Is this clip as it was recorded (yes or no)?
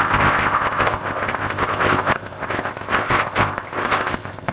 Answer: no